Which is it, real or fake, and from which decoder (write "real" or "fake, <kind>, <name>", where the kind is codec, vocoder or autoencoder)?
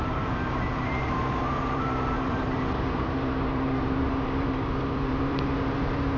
fake, vocoder, BigVGAN v2